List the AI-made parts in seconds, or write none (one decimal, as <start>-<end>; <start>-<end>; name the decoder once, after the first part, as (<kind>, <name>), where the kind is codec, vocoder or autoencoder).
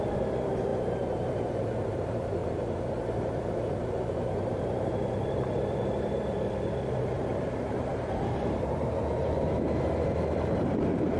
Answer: 0.0-11.2 (vocoder, BigVGAN v2)